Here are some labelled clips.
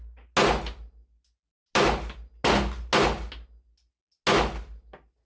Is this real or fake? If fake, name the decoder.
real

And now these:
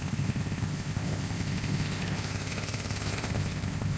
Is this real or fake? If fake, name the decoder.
fake, codec, ZipCodec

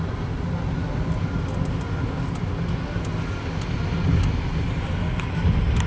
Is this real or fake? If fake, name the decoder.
real